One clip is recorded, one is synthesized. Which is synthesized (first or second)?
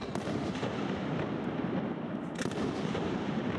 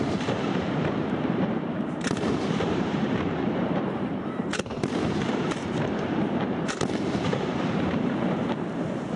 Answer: second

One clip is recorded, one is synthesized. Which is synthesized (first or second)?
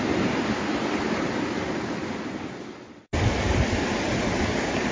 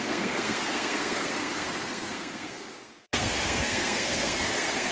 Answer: second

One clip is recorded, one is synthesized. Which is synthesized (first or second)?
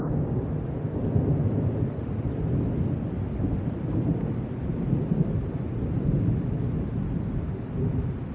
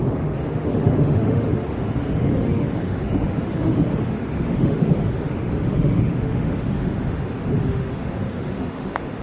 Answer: second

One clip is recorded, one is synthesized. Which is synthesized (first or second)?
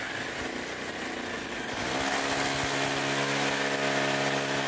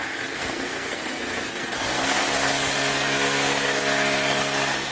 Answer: second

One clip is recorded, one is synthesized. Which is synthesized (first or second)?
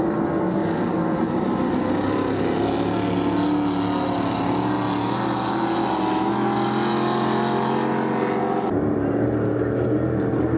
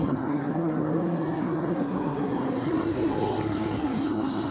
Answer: second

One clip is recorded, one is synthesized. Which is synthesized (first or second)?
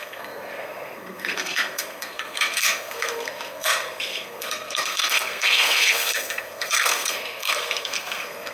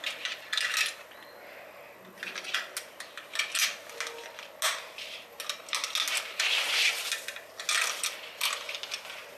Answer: first